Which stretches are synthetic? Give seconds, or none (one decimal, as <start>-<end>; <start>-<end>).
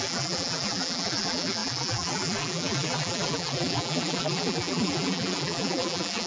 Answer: 0.0-6.3